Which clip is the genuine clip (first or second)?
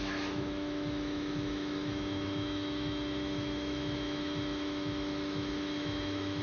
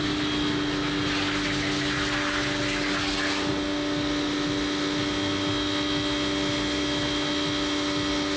second